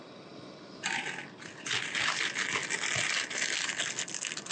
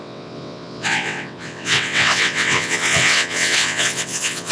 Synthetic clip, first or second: second